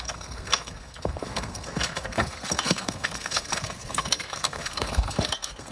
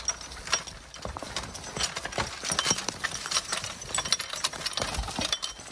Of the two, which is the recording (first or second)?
second